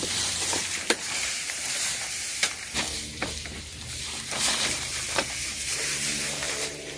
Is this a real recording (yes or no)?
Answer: no